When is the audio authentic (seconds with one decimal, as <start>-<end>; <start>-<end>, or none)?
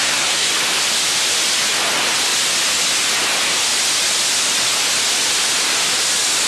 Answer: 0.5-6.5